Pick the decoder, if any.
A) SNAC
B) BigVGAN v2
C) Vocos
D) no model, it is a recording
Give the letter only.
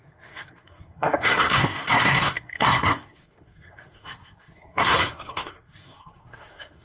A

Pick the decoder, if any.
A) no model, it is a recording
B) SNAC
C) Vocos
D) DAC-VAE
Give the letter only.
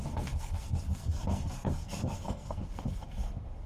B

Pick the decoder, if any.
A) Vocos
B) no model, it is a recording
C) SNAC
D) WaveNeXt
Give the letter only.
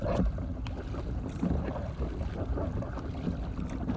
B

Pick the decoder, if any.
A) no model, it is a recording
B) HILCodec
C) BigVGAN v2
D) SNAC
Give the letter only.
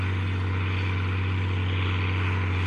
A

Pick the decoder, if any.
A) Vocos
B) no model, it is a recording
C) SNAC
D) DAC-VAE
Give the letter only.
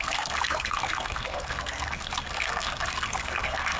C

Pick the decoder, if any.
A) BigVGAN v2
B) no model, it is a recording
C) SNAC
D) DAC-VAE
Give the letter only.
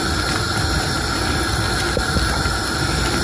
B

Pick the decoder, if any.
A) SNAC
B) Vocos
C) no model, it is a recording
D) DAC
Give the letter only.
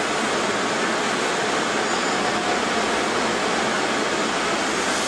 C